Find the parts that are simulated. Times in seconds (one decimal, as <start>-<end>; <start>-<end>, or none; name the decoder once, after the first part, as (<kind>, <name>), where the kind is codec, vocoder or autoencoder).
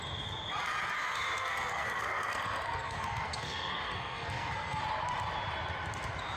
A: 1.0-4.8 (codec, SNAC)